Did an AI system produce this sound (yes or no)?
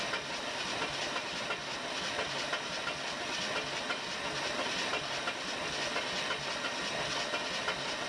no